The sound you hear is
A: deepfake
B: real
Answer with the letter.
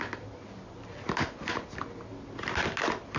B